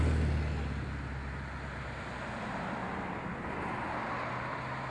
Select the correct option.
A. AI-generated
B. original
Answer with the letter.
B